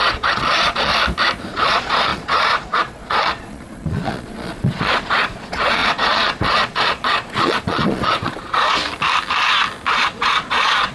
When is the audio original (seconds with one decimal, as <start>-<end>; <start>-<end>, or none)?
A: 0.9-1.5; 8.8-9.9